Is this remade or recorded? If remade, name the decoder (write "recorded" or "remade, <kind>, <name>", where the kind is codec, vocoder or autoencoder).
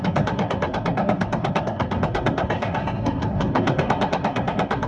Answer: remade, codec, SNAC